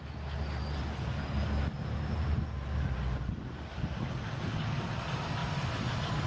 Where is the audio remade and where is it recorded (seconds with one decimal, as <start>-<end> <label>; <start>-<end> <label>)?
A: 0.0-6.3 recorded